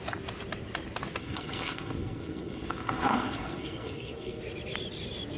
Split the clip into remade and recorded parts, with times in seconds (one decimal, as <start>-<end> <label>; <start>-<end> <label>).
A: 0.0-1.2 recorded; 1.2-4.4 remade; 4.4-5.4 recorded